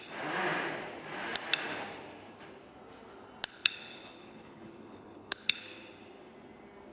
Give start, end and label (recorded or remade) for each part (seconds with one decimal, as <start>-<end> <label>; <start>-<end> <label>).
0.0-3.5 recorded; 3.5-5.6 remade; 5.6-6.9 recorded